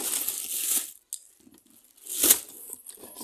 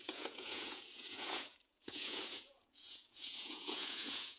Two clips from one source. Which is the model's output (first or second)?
second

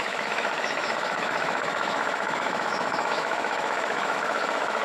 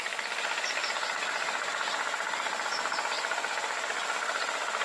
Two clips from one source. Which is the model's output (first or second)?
first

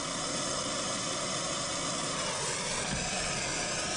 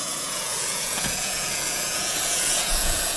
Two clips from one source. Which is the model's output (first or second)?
second